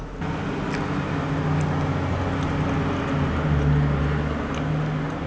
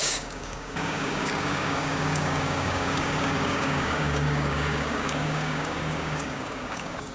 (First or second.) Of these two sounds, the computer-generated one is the second